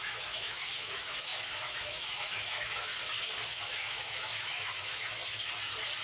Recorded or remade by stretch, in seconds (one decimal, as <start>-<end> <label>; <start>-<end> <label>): 0.0-2.9 remade; 2.9-3.5 recorded; 3.5-5.2 remade; 5.2-6.0 recorded